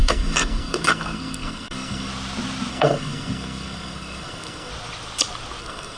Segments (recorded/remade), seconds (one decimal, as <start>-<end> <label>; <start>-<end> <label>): 0.0-2.1 remade; 2.1-2.7 recorded; 2.7-4.7 remade; 4.7-5.6 recorded; 5.6-6.0 remade